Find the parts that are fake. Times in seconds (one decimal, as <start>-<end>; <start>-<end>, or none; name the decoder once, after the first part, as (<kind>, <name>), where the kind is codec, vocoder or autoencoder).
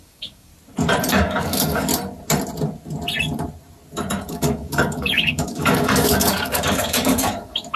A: 0.0-0.5 (codec, DAC); 1.1-1.9; 4.3-7.8